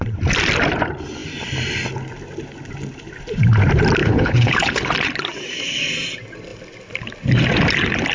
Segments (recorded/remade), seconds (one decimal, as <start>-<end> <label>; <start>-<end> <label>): 0.0-4.0 recorded; 4.0-4.9 remade; 4.9-8.1 recorded